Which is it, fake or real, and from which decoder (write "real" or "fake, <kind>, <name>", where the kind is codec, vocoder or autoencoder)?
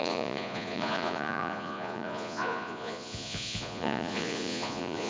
fake, vocoder, Vocos